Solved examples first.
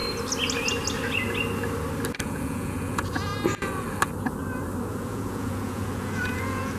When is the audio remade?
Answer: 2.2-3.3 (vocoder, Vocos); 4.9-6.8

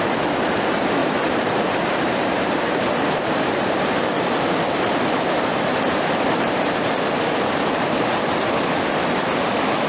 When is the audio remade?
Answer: 0.0-1.0 (vocoder, BigVGAN v2); 1.7-9.9

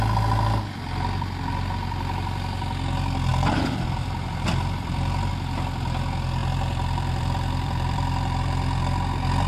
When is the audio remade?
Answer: 3.3-5.3 (vocoder, BigVGAN v2); 6.4-8.8

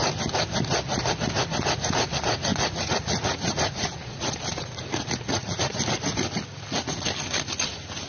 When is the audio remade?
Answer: 2.5-5.8 (vocoder, Vocos)